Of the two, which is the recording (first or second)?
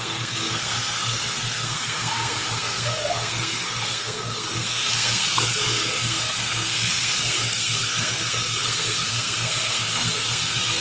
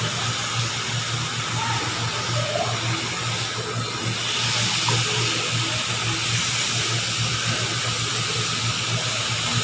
second